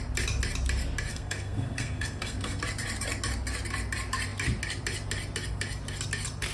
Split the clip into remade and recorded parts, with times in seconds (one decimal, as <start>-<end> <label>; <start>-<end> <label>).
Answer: 0.0-1.1 recorded; 1.1-2.6 remade; 2.6-6.5 recorded